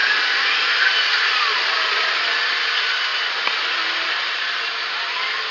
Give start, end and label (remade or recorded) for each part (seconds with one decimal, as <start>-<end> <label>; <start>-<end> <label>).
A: 0.0-0.9 recorded; 0.9-5.5 remade